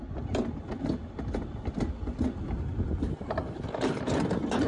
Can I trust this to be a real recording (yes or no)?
yes